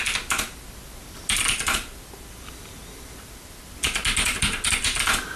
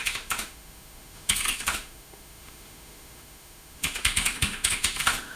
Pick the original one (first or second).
first